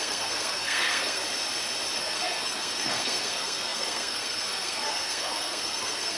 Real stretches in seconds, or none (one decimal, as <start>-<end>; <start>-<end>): 1.2-2.0